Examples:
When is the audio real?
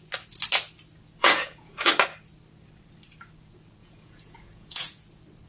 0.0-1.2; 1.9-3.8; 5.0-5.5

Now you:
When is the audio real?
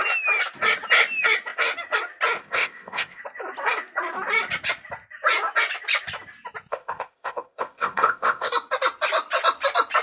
0.0-2.4; 3.2-6.7; 8.5-10.0